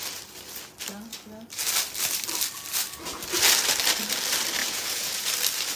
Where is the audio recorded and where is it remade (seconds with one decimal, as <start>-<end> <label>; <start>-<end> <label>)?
0.0-4.6 recorded; 4.6-5.3 remade; 5.3-5.8 recorded